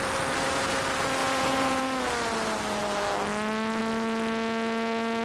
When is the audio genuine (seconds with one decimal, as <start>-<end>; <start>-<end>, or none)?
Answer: 0.0-1.2; 1.8-5.2